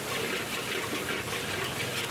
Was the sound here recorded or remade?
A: recorded